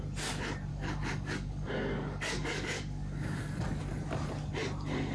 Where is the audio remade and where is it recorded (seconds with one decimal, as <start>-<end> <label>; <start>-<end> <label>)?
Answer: 0.0-0.7 recorded; 0.7-3.8 remade; 3.8-5.1 recorded